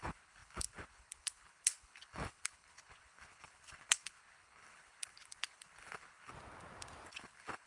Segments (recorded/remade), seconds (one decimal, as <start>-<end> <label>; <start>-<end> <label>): 0.0-6.3 remade; 6.3-7.1 recorded; 7.1-7.7 remade